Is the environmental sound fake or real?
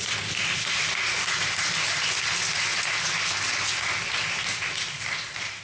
real